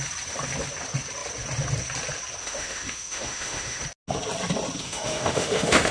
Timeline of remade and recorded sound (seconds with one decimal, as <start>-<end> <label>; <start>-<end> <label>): 0.0-2.4 recorded; 2.4-3.8 remade; 3.8-4.8 recorded; 4.8-5.9 remade